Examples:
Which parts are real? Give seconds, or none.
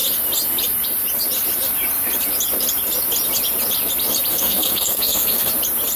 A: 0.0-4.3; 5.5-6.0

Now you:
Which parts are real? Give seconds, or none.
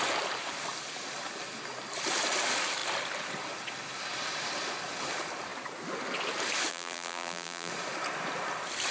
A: 0.0-6.7; 7.7-8.9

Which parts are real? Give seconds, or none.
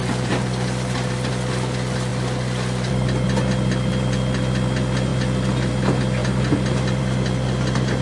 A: 0.0-8.0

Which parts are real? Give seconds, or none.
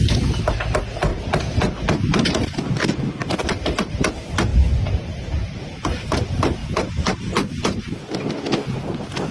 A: 0.0-1.1; 3.9-4.5; 6.1-6.6; 8.0-9.3